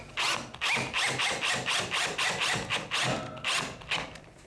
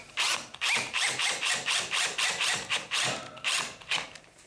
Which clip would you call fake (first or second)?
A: second